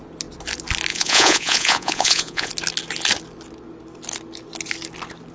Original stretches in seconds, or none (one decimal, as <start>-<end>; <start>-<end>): 0.0-0.9; 2.5-5.3